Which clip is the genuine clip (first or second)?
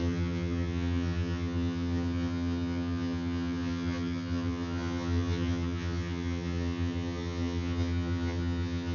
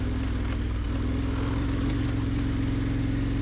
second